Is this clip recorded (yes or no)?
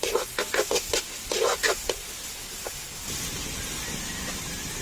yes